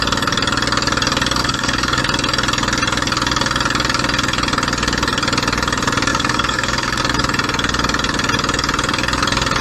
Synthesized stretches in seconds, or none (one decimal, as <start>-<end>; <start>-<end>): 1.4-2.0; 6.1-7.0